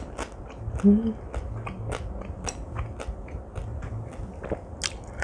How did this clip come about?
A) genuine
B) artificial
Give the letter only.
A